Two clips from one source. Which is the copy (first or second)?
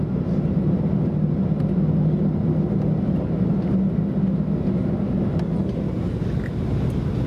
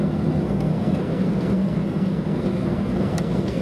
second